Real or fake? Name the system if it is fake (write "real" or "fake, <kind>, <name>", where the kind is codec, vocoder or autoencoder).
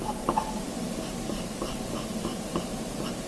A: real